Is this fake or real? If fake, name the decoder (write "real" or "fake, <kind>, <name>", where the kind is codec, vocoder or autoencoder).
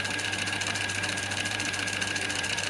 fake, vocoder, BigVGAN v2